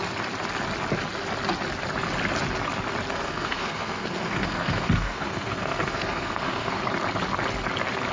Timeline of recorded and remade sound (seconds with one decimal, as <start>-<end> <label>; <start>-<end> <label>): 0.0-3.1 recorded; 3.1-6.8 remade; 6.8-8.1 recorded